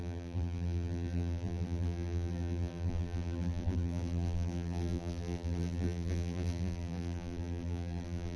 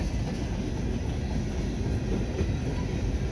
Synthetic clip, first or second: first